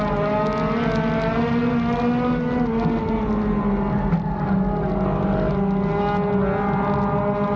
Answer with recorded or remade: recorded